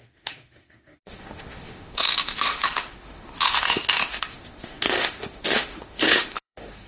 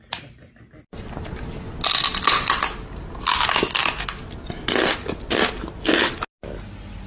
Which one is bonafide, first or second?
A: second